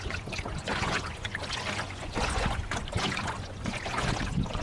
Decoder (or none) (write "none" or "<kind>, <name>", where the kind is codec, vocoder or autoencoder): vocoder, Vocos